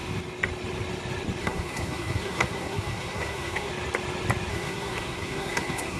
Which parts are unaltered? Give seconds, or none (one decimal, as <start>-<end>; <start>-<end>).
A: 0.0-1.4; 3.7-4.5